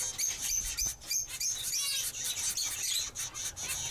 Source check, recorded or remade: recorded